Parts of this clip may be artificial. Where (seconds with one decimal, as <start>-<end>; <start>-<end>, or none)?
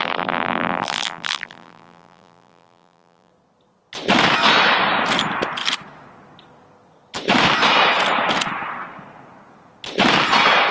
0.0-3.3